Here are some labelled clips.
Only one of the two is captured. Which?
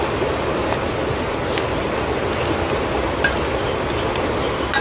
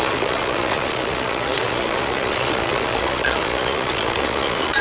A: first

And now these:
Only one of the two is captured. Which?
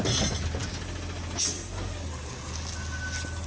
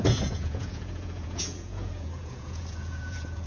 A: first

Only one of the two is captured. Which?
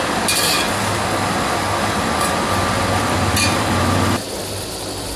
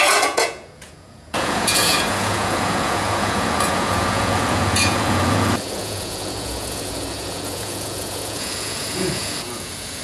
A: first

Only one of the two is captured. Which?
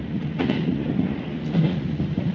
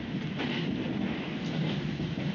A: second